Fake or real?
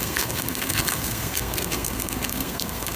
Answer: fake